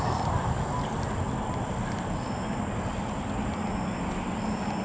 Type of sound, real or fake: real